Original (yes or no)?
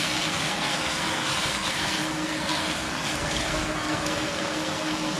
no